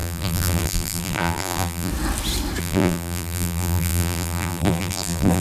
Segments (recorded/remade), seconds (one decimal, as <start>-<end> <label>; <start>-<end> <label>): 0.0-1.9 remade; 1.9-2.6 recorded; 2.6-5.4 remade